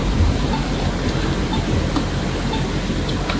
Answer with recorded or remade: recorded